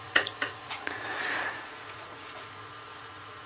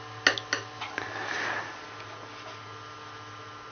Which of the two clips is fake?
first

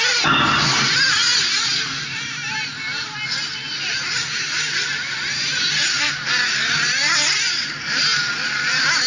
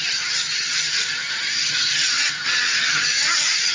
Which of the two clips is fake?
second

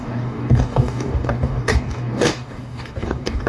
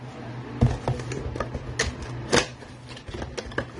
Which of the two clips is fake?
first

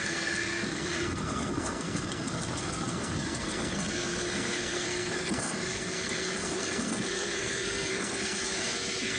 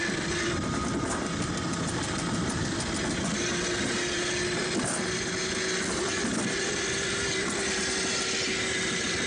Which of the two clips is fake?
first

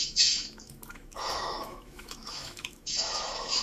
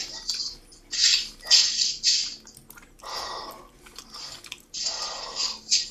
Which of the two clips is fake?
first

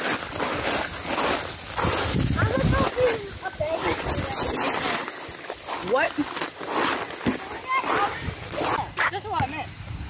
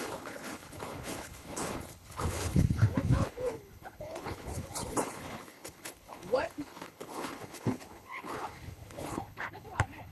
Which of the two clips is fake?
second